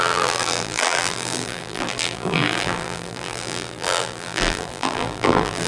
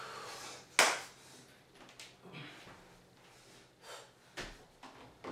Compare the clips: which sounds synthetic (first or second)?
first